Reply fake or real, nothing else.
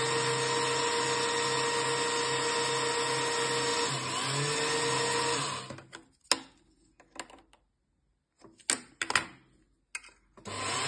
real